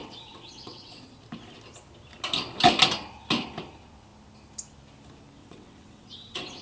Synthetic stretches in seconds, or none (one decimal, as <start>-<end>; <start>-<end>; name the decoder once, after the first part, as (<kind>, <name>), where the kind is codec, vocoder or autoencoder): 0.0-1.2 (vocoder, WaveNeXt); 5.4-6.6